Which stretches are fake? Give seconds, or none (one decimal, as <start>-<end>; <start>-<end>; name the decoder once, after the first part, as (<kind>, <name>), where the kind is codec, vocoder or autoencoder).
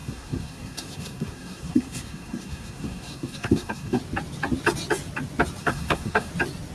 0.0-4.0 (codec, SNAC); 5.6-6.3